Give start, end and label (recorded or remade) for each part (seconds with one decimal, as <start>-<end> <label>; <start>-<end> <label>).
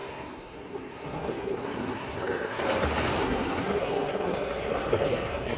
0.0-2.6 remade; 2.6-3.2 recorded; 3.2-5.6 remade